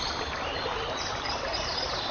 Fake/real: real